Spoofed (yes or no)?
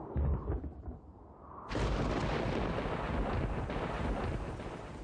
no